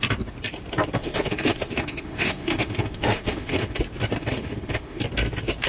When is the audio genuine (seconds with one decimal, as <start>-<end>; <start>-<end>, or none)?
0.0-1.0; 3.8-4.2; 5.0-5.7